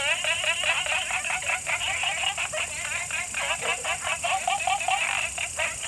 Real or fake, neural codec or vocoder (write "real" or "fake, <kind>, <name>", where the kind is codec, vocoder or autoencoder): real